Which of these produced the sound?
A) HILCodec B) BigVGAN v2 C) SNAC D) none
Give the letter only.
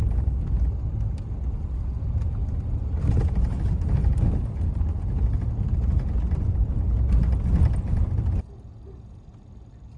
D